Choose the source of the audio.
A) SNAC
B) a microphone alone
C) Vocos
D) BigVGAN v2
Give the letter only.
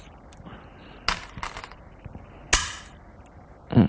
B